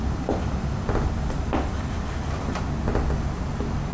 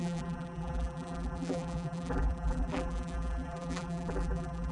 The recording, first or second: first